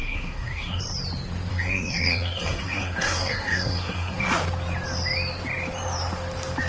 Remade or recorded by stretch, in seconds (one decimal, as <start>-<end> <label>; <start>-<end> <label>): 0.0-0.8 remade; 0.8-1.5 recorded; 1.5-4.2 remade; 4.2-6.7 recorded

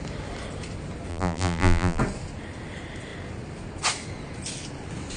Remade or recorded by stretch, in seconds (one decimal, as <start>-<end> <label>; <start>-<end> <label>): 0.0-1.1 recorded; 1.1-2.0 remade; 2.0-5.2 recorded

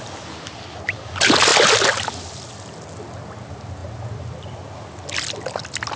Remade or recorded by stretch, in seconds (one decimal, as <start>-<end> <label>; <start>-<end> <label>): 0.0-6.0 recorded

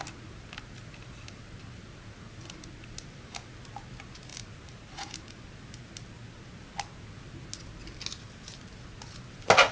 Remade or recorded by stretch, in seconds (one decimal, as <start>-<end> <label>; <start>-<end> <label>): 0.0-4.3 recorded; 4.3-5.6 remade; 5.6-9.7 recorded

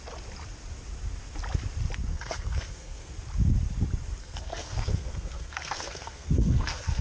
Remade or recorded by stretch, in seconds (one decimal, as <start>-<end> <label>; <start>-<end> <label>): 0.0-2.1 recorded; 2.1-3.1 remade; 3.1-4.2 recorded; 4.2-7.0 remade

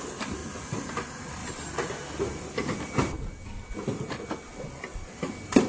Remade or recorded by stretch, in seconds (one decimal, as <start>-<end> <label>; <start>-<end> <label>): 0.0-5.7 recorded

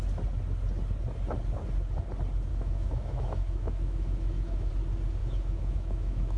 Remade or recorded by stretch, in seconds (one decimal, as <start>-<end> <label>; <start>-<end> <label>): 0.0-2.5 recorded; 2.5-4.7 remade; 4.7-5.2 recorded; 5.2-6.4 remade

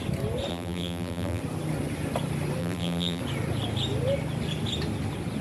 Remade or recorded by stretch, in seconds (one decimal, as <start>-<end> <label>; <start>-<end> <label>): 0.0-0.5 recorded; 0.5-1.4 remade; 1.4-2.6 recorded; 2.6-3.2 remade; 3.2-5.4 recorded